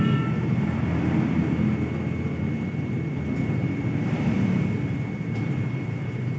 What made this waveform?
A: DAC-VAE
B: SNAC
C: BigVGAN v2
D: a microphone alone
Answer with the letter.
C